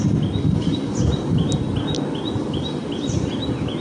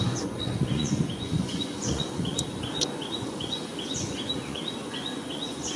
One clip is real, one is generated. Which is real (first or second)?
first